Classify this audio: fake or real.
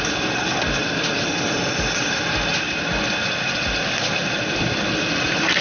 real